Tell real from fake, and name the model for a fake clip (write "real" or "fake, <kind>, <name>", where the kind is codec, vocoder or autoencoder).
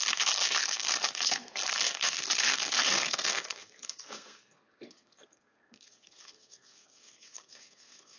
fake, codec, SNAC